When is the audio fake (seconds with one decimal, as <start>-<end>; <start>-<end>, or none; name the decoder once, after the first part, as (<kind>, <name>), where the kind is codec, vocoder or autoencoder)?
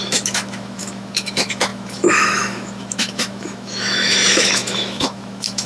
0.0-5.7 (autoencoder, DAC-VAE)